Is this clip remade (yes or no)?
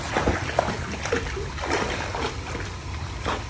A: no